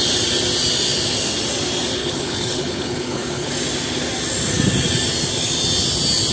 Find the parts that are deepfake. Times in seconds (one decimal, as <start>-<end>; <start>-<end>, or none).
2.0-3.5